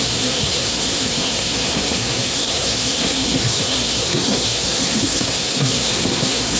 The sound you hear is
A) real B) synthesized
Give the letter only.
B